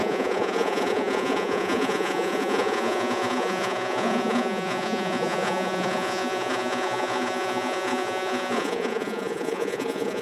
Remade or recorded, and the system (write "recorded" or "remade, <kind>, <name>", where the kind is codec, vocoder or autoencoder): remade, vocoder, Vocos